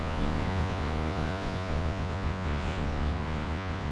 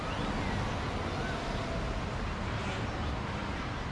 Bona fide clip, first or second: second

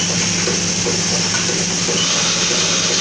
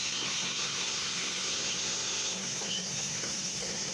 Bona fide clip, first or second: first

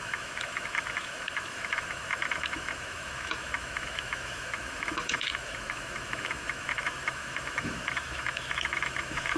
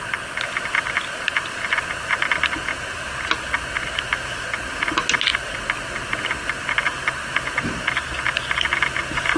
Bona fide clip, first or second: second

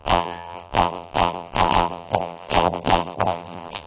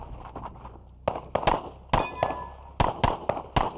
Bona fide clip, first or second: second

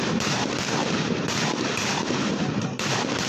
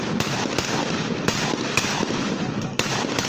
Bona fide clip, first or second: second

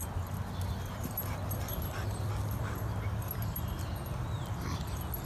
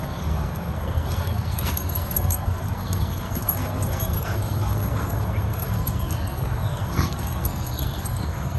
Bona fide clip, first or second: first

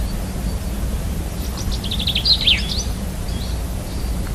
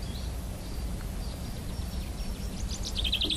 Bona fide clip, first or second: first